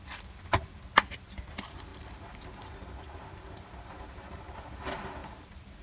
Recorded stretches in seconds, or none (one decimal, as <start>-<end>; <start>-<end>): 0.0-1.9; 4.4-5.2